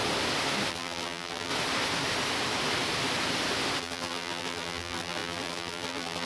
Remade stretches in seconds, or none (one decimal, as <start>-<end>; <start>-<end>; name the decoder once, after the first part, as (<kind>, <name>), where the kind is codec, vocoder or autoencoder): 0.7-1.5 (vocoder, BigVGAN v2); 3.8-6.3